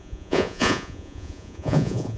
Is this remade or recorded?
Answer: remade